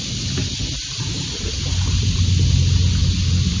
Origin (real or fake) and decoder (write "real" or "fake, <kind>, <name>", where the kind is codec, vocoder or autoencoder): real